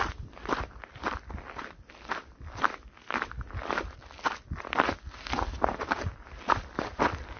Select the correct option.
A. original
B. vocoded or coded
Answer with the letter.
B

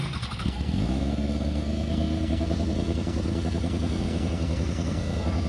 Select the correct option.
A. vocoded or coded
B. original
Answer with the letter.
A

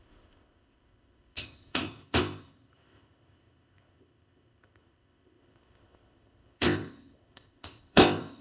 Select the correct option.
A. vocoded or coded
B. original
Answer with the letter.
A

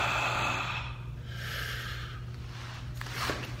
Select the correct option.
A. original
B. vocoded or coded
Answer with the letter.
A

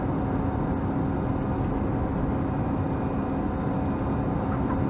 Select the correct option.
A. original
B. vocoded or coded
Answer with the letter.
A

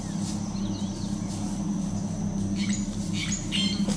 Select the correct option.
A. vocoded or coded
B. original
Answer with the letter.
B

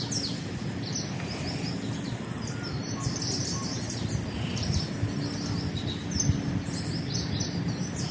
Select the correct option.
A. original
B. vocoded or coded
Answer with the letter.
A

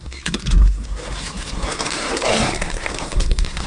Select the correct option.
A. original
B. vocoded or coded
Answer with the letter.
B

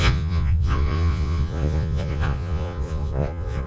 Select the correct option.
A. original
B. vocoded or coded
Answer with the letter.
B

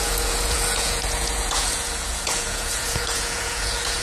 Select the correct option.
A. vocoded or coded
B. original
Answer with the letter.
A